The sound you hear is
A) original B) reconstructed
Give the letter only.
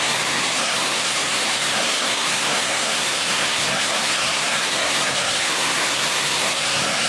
B